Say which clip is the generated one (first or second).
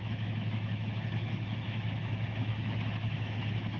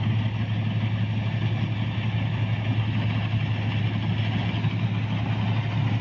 first